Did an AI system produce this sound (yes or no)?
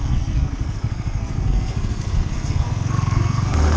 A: yes